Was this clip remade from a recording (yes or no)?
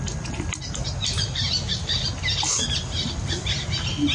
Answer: no